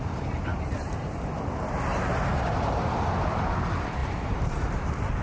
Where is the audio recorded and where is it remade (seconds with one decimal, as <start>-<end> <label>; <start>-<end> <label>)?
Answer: 0.0-0.5 recorded; 0.5-1.3 remade; 1.3-1.9 recorded; 1.9-2.9 remade; 2.9-4.0 recorded; 4.0-4.7 remade; 4.7-5.2 recorded